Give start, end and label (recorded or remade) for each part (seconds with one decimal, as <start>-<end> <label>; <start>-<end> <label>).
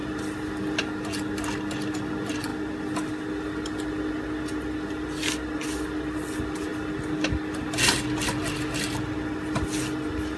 0.0-10.4 recorded